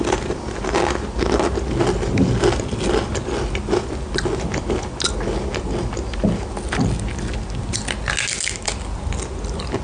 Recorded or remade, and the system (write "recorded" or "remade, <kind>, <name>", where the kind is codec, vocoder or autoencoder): recorded